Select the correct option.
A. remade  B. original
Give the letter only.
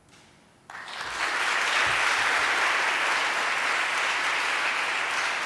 B